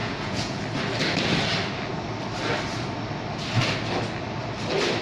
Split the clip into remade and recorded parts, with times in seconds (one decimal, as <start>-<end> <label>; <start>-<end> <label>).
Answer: 0.0-0.6 remade; 0.6-5.0 recorded